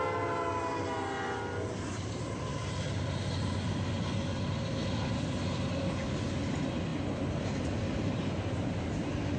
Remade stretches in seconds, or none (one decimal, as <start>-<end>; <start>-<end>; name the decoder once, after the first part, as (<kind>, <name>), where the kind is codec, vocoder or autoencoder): none